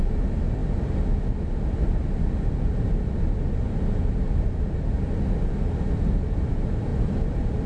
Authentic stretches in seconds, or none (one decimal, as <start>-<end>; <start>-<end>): 0.0-6.9